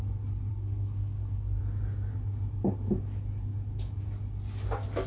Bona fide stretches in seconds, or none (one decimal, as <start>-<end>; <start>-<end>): 0.0-0.5; 1.6-5.1